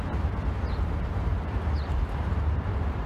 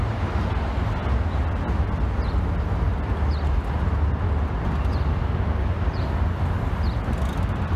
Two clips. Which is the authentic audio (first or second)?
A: second